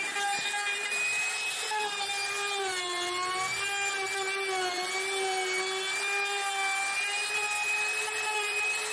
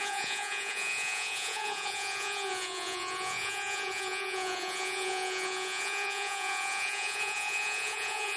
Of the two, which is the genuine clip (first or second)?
first